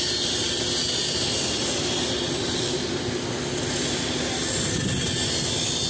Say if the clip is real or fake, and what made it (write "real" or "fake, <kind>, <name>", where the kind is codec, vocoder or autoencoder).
real